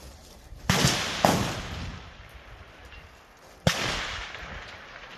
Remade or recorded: recorded